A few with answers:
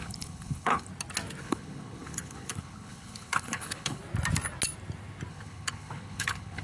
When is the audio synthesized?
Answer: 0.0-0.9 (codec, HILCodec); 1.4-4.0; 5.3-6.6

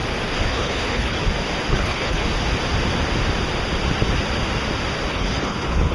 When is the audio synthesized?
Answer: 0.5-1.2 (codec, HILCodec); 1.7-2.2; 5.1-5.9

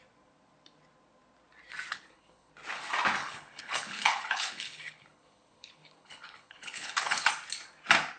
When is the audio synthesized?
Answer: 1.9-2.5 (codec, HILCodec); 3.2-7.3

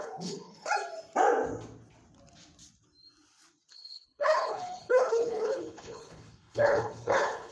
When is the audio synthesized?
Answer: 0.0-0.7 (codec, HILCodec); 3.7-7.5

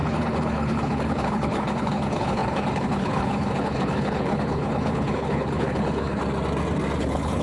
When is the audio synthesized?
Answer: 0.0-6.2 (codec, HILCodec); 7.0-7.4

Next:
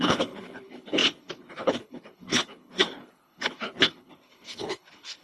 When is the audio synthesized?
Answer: 0.0-5.2 (codec, HILCodec)

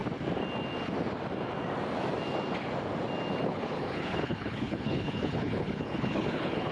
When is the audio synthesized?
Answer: 3.4-6.7 (codec, HILCodec)